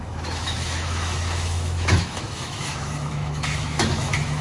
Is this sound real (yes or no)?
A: no